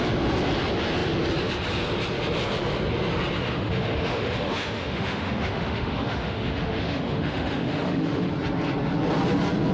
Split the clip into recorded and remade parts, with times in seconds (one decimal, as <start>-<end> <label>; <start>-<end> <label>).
0.0-3.4 recorded; 3.4-8.3 remade; 8.3-9.7 recorded